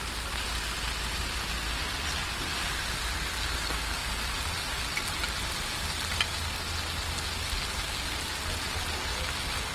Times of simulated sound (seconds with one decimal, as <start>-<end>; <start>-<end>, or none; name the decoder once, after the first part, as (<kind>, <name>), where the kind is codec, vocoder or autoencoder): 4.0-4.8 (vocoder, BigVGAN v2)